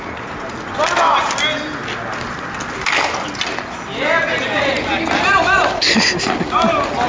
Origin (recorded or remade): recorded